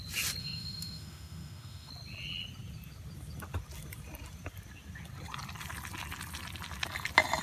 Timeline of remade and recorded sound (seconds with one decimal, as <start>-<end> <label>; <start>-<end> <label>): 0.0-0.4 recorded; 0.4-1.9 remade; 1.9-7.4 recorded